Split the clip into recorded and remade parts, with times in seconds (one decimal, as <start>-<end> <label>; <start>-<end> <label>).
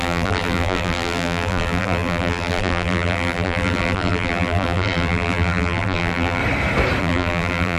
0.0-6.4 remade; 6.4-7.0 recorded; 7.0-7.8 remade